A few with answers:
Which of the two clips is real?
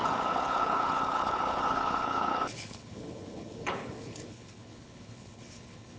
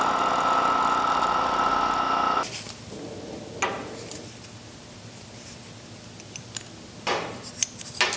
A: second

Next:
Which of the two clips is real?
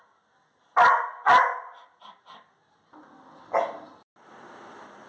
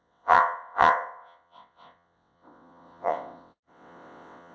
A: first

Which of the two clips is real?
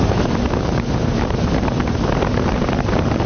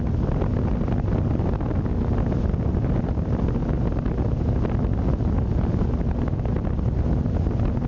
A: second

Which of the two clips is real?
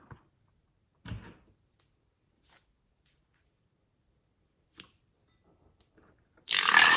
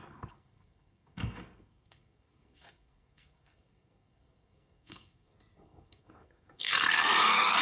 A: first